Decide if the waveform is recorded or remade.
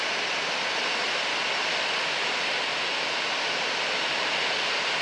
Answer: recorded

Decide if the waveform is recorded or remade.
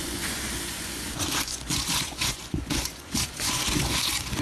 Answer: remade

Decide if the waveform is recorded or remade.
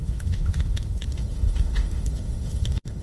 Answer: remade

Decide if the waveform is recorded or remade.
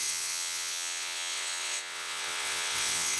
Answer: remade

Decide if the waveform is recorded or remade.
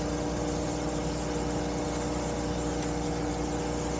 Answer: recorded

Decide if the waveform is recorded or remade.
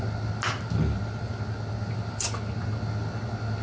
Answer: recorded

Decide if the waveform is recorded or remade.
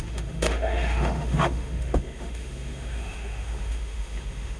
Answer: remade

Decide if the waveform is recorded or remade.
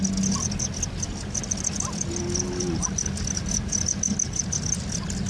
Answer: recorded